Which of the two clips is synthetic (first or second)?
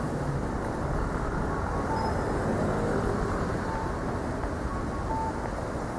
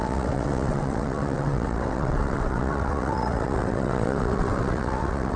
second